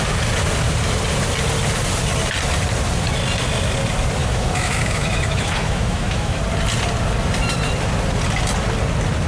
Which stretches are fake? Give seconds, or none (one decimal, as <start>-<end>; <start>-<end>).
4.2-6.4